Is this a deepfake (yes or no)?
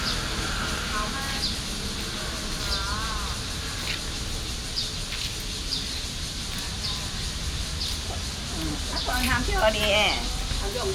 no